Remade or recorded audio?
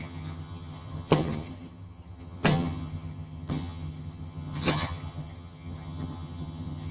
remade